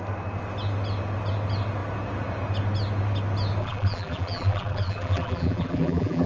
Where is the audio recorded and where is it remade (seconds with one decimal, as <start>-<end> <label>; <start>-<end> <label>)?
0.0-3.6 recorded; 3.6-6.3 remade